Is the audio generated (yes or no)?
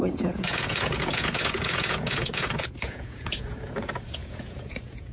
yes